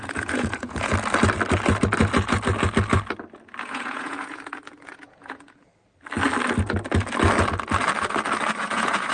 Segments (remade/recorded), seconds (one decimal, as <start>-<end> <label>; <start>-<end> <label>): 0.0-0.9 remade; 0.9-3.6 recorded; 3.6-5.7 remade; 5.7-8.6 recorded; 8.6-9.1 remade